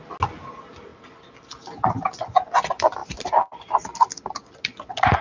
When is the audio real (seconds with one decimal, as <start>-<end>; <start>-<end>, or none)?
0.0-3.0; 4.5-5.2